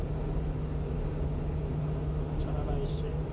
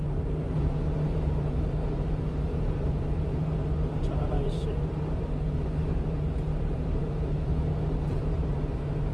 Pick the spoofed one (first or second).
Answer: second